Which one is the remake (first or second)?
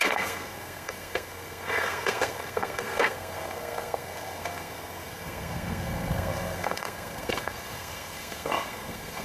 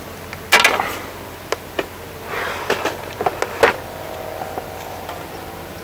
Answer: first